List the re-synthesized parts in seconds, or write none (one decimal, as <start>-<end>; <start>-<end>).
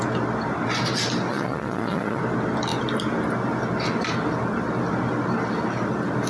1.3-2.2